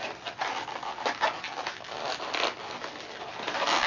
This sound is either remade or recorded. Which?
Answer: recorded